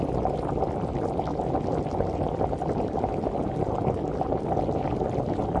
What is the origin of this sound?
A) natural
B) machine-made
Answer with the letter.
A